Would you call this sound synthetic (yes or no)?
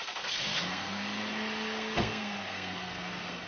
yes